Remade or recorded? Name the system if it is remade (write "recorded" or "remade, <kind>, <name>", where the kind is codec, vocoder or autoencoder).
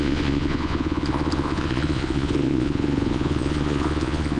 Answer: remade, vocoder, Vocos